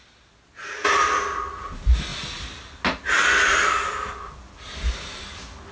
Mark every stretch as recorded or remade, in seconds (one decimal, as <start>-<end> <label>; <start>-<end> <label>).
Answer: 0.0-5.7 recorded